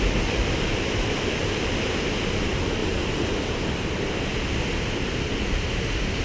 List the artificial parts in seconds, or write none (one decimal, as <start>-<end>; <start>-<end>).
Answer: 2.8-3.6